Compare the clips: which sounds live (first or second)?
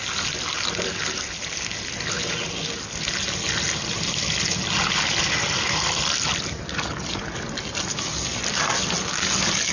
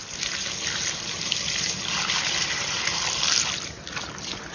first